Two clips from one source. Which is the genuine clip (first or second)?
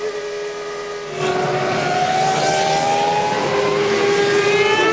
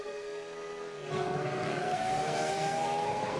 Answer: first